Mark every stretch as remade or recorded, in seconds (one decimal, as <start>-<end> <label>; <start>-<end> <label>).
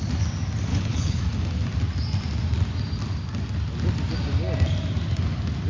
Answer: 0.0-0.7 recorded; 0.7-1.2 remade; 1.2-5.7 recorded